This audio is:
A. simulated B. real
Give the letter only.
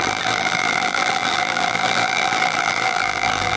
A